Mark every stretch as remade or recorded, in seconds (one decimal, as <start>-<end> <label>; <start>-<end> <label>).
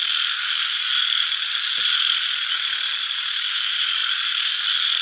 0.0-3.0 recorded; 3.0-5.0 remade